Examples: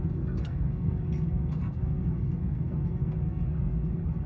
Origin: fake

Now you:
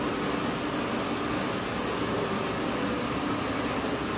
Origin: real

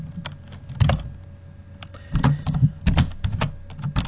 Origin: real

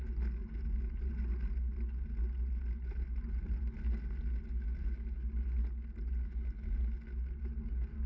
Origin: real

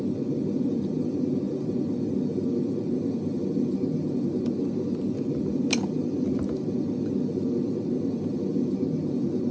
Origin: real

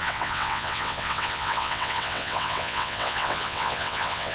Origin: fake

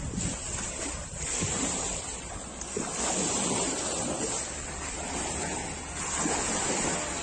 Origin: real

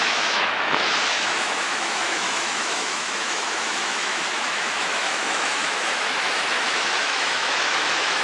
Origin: fake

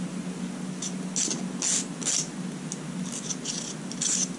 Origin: real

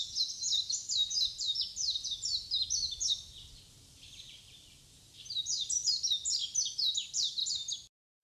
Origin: real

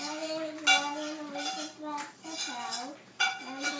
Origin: real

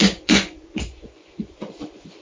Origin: fake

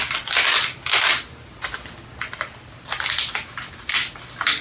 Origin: real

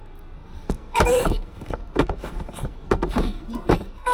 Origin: fake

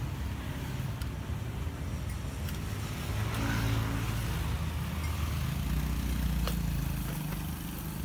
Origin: real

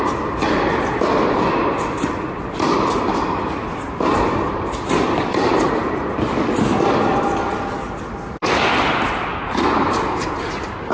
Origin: real